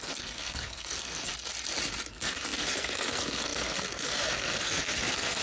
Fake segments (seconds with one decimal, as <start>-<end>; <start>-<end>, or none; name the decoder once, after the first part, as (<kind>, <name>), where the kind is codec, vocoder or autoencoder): 0.0-1.3 (codec, SNAC); 2.1-5.4